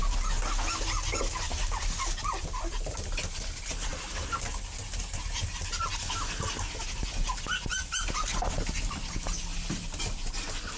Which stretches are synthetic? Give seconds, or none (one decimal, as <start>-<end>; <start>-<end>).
9.5-10.3